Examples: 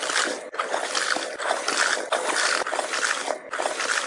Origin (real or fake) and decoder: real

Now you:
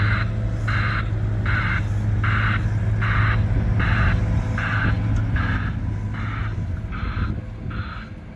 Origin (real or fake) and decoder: real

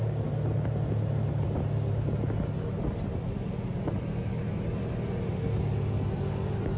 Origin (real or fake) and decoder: real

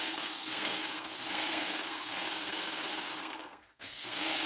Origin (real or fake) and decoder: fake, codec, SNAC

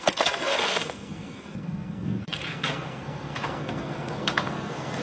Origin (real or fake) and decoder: fake, codec, SNAC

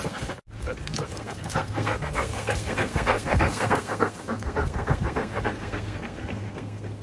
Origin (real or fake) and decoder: fake, codec, SNAC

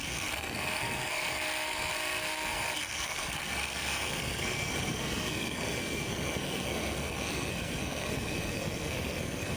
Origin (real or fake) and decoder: fake, codec, SNAC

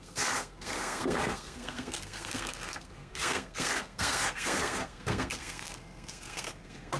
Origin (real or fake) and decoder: fake, codec, SNAC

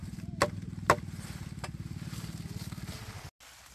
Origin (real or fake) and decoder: real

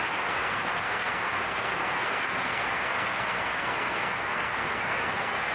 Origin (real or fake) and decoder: fake, codec, SNAC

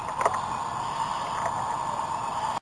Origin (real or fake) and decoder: real